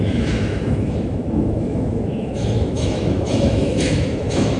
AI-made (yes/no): yes